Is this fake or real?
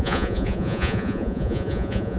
fake